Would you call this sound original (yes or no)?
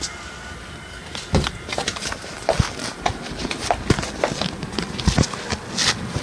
yes